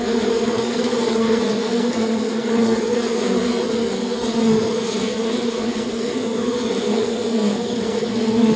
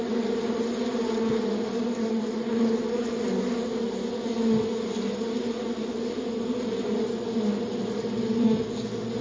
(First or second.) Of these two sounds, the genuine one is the second